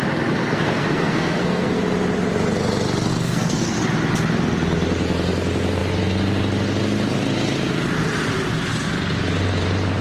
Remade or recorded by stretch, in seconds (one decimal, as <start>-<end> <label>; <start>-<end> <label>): 0.0-0.4 recorded; 0.4-1.8 remade; 1.8-3.1 recorded; 3.1-3.8 remade; 3.8-10.0 recorded